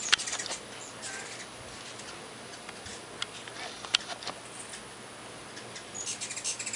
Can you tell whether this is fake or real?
real